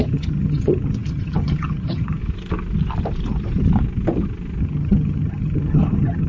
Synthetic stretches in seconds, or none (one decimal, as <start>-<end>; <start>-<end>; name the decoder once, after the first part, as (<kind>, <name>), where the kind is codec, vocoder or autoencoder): 0.0-2.2 (vocoder, HiFi-GAN); 4.6-6.3